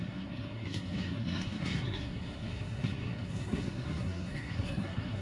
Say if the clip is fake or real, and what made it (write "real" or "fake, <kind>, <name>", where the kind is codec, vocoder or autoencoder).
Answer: fake, codec, SNAC